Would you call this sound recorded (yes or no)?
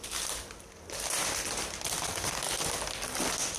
yes